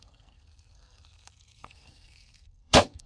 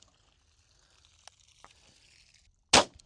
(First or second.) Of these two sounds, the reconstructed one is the first